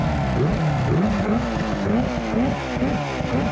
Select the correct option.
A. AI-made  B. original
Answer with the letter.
B